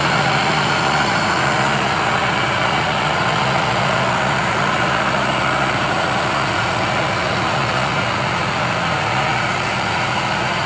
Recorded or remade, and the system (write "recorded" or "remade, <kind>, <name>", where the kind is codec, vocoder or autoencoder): remade, vocoder, Vocos